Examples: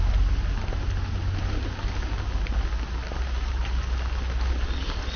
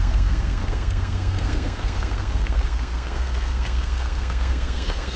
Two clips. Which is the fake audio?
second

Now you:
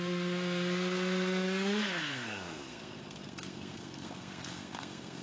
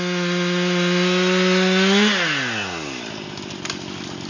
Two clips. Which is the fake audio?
first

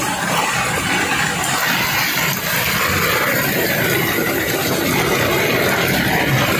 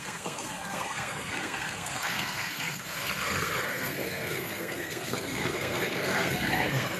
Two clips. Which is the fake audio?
second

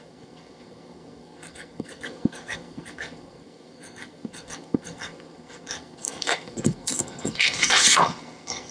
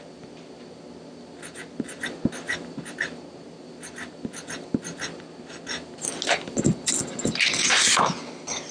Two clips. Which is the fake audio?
first